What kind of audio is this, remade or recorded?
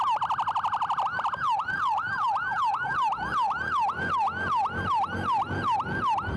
recorded